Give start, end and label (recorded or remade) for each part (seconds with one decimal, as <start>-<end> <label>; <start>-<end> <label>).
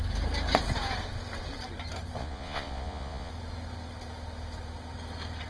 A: 0.0-2.2 recorded; 2.2-3.3 remade; 3.3-5.5 recorded